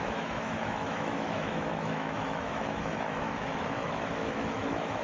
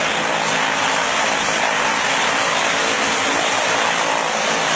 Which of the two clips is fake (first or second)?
first